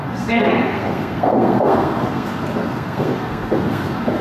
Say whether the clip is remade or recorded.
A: remade